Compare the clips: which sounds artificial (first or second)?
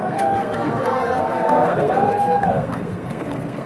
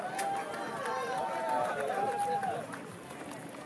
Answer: first